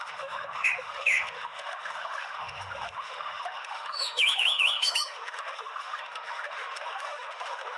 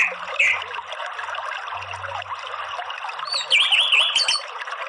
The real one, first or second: second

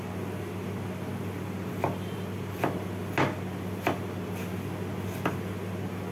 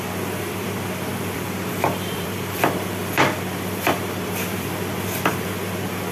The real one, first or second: first